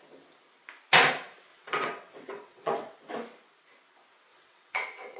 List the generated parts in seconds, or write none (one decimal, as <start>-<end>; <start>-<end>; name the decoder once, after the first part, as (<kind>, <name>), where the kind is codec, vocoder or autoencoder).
1.5-3.1 (vocoder, WaveNeXt); 4.3-5.2

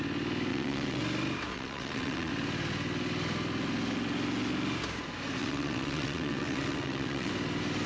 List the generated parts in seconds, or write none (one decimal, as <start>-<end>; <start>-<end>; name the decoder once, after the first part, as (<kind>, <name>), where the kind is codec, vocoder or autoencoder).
0.5-1.0 (vocoder, WaveNeXt); 1.5-2.3; 5.4-7.3